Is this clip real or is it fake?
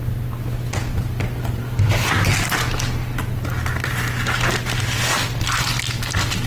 real